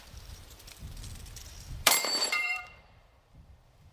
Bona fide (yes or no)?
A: no